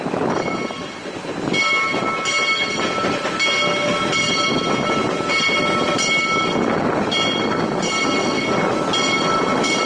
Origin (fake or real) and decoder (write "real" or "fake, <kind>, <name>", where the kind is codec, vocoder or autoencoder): real